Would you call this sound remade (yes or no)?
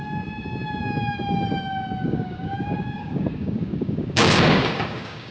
yes